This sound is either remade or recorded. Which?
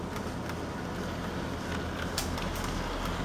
recorded